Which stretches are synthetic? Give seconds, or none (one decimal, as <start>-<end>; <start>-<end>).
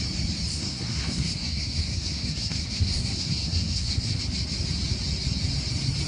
0.5-4.2